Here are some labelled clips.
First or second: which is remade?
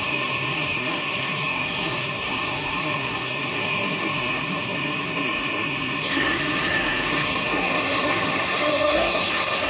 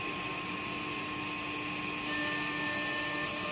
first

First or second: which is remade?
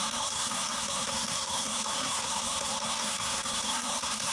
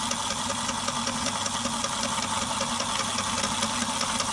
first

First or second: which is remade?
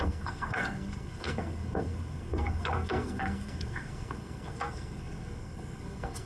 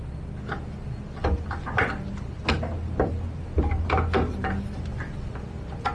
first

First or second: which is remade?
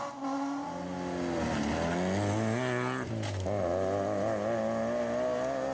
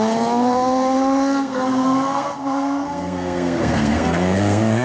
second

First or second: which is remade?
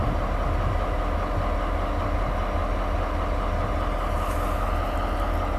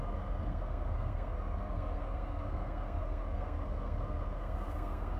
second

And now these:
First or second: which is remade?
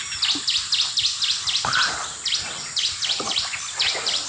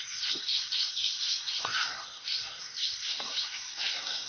second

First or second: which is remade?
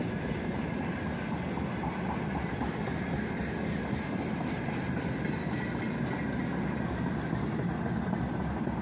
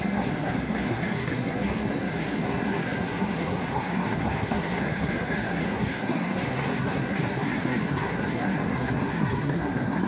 second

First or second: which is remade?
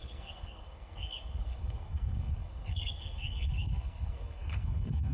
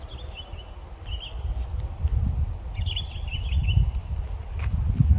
first